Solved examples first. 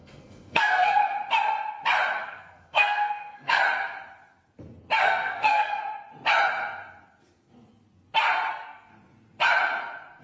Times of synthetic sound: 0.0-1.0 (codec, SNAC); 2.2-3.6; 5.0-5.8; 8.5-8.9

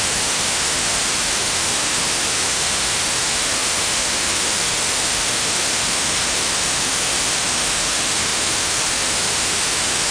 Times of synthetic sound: 0.0-10.1 (autoencoder, DAC-VAE)

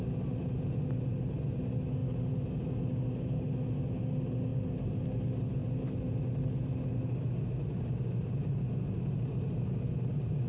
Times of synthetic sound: none

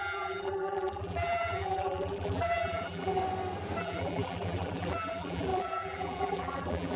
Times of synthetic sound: 0.0-3.2 (vocoder, BigVGAN v2); 3.8-7.0

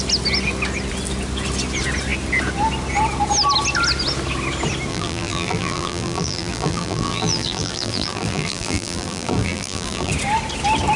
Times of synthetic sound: 4.9-10.1 (vocoder, BigVGAN v2)

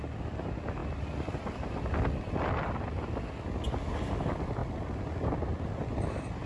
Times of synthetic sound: none